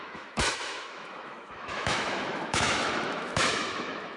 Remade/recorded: remade